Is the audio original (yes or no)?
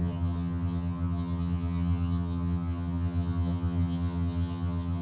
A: no